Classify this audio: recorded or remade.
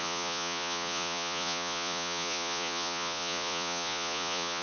remade